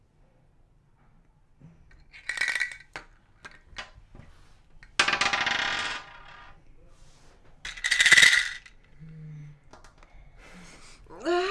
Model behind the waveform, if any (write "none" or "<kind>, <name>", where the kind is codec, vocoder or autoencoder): none